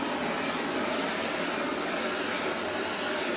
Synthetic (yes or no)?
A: no